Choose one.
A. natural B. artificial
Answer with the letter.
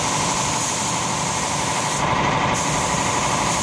A